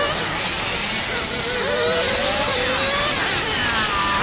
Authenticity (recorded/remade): recorded